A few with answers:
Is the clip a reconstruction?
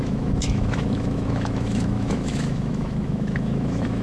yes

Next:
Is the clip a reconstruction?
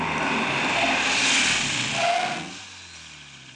no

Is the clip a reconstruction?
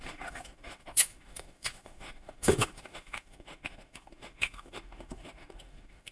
yes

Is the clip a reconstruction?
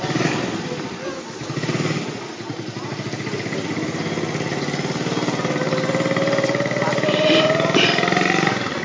no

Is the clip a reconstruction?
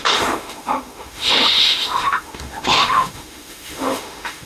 yes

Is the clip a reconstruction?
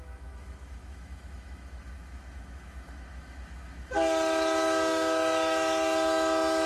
yes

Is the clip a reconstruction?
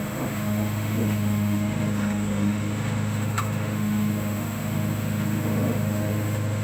yes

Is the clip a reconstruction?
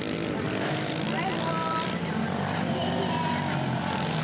no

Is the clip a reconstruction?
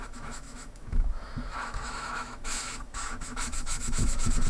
yes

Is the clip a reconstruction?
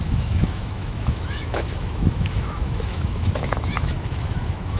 yes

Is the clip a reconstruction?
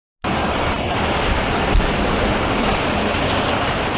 no